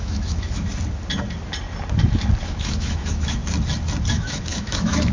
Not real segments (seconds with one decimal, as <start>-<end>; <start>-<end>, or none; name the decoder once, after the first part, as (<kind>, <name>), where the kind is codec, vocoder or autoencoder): 0.0-0.7 (autoencoder, DAC-VAE); 2.5-3.4; 4.1-5.1